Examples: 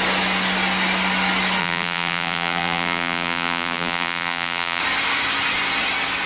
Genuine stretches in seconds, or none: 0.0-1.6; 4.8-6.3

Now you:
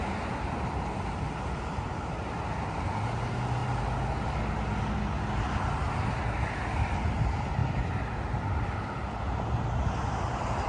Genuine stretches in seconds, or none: 0.0-10.7

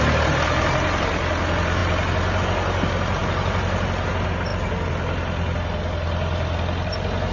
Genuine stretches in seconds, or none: 0.0-7.3

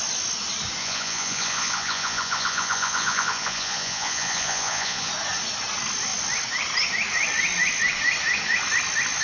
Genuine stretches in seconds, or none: 0.0-0.8; 5.1-9.2

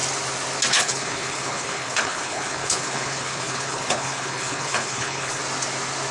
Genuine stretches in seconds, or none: 0.0-0.7; 5.4-6.1

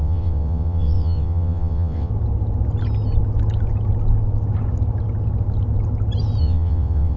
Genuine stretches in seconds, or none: 2.1-6.4

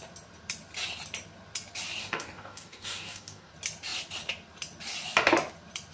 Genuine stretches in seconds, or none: 0.0-2.0; 3.5-5.9